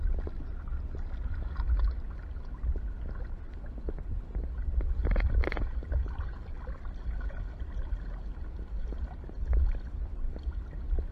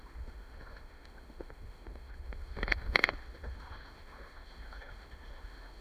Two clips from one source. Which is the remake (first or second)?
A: second